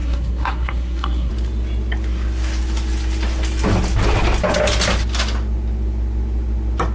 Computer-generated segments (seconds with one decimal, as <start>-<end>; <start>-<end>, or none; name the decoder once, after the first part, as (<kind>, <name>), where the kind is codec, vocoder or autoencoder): 0.0-1.3 (codec, SNAC)